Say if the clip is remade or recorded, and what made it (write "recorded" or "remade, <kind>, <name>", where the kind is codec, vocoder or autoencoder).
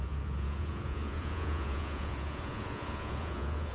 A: remade, vocoder, Vocos